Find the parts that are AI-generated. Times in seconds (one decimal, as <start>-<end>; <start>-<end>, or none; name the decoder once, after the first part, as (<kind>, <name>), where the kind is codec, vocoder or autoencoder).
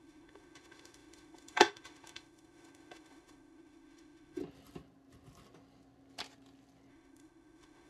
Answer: 0.0-4.4 (autoencoder, DAC-VAE); 6.9-7.9